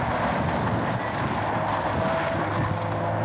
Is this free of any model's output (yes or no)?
yes